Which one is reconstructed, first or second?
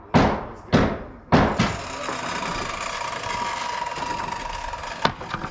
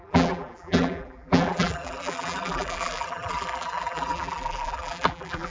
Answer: second